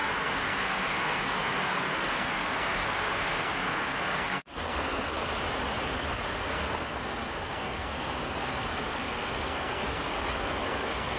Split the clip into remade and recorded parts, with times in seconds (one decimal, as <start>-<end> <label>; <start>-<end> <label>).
0.0-5.3 remade; 5.3-5.9 recorded; 5.9-11.2 remade